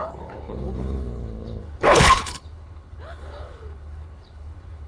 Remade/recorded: remade